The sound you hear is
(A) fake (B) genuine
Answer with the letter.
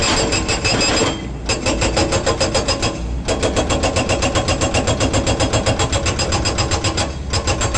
B